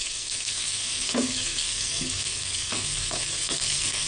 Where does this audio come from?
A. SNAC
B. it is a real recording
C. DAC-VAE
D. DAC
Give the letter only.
A